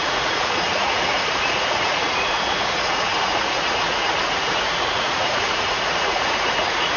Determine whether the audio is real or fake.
fake